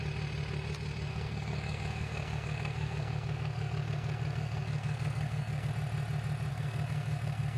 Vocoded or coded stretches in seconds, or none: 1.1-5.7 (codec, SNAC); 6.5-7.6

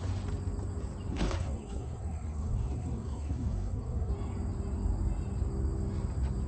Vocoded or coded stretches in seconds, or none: 1.1-4.1 (codec, SNAC)

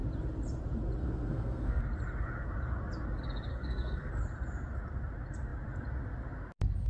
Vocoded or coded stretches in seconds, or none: 1.0-1.8 (codec, SNAC); 3.5-4.1